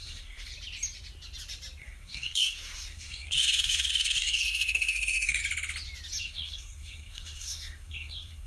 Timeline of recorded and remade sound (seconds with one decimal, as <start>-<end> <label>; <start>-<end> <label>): 0.0-0.5 remade; 0.5-1.8 recorded; 1.8-5.4 remade; 5.4-6.2 recorded; 6.2-8.5 remade